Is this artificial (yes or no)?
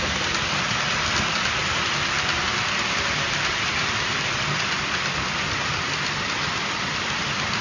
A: no